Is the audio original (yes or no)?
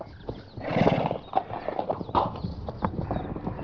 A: yes